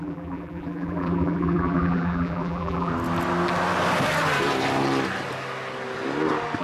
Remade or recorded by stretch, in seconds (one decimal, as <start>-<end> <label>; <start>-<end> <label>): 0.0-2.9 remade; 2.9-6.6 recorded